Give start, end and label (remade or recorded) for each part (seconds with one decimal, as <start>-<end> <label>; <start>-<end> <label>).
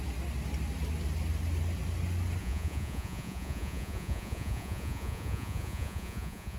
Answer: 0.0-2.4 recorded; 2.4-6.6 remade